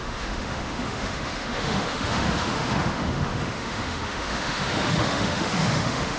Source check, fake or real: fake